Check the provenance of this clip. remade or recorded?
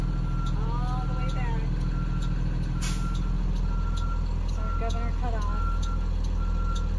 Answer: recorded